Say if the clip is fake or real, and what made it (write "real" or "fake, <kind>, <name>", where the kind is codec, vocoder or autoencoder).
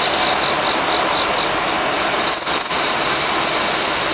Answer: real